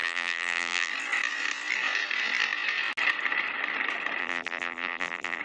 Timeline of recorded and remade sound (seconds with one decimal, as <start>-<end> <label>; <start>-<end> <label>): 0.0-0.9 remade; 0.9-4.2 recorded; 4.2-5.4 remade